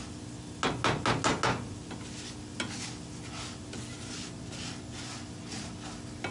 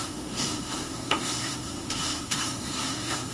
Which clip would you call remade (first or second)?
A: second